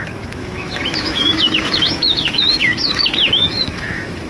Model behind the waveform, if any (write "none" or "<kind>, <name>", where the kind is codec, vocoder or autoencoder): autoencoder, DAC-VAE